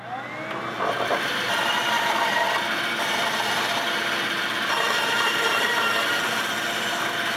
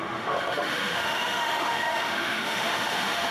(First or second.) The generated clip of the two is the second